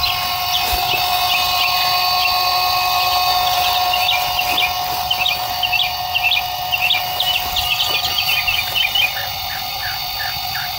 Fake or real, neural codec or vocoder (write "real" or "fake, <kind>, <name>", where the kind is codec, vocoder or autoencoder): real